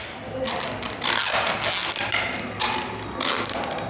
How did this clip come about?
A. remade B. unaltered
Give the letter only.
B